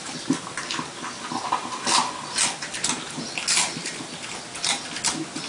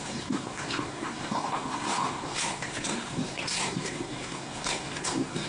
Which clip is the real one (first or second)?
first